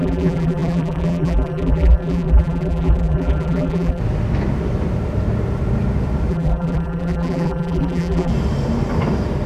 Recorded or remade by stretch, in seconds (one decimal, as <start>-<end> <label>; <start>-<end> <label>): 0.0-4.0 remade; 4.0-6.3 recorded; 6.3-8.3 remade; 8.3-9.5 recorded